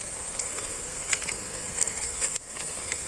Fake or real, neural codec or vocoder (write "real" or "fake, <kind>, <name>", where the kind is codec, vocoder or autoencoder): fake, codec, SNAC